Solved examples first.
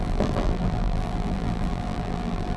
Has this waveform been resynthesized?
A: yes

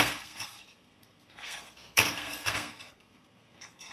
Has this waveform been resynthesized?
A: yes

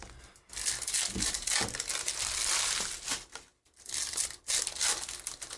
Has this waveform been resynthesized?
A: no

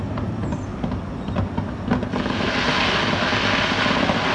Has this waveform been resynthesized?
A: no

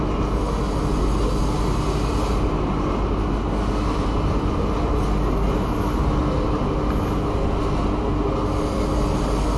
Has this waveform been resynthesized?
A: no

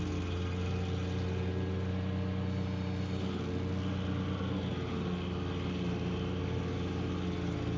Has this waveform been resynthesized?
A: no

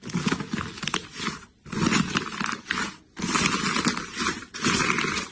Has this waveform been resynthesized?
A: no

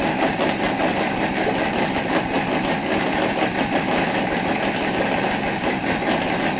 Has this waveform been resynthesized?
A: no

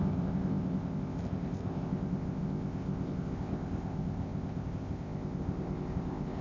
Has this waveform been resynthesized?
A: yes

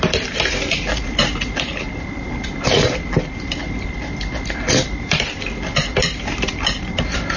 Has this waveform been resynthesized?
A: no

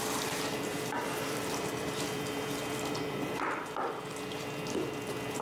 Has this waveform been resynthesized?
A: yes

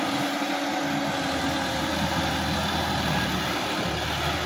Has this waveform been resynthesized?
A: no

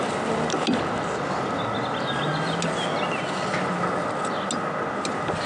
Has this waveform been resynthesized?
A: no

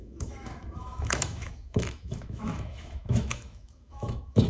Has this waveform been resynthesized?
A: yes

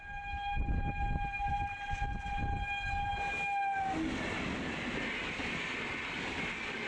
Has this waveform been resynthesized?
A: no